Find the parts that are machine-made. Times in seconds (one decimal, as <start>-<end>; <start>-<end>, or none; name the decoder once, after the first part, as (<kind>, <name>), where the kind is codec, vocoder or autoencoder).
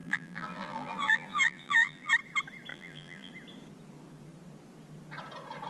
0.0-2.1 (vocoder, BigVGAN v2); 2.7-3.3